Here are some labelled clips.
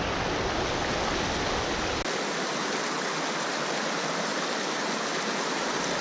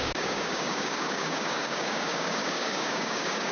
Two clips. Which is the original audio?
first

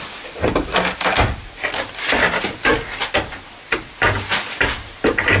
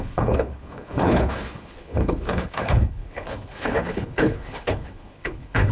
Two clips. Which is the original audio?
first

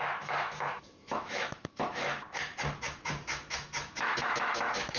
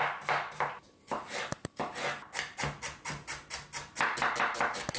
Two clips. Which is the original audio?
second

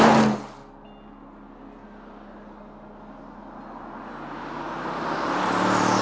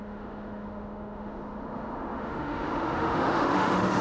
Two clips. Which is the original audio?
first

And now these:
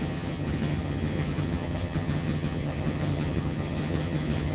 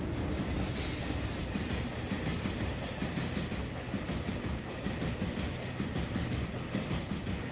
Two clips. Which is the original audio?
second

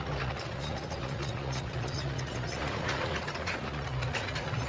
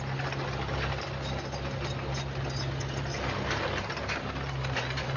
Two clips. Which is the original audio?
second